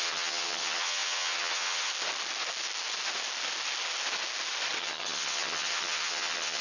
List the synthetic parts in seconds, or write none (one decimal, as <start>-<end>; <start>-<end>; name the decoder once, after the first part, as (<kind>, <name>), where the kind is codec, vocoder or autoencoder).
0.0-1.9 (vocoder, HiFi-GAN); 4.8-6.6